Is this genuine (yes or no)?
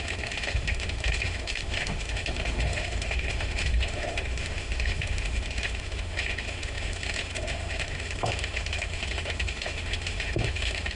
no